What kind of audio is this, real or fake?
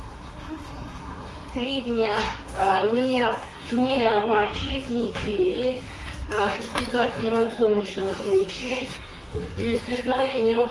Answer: fake